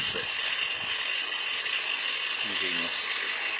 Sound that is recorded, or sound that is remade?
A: recorded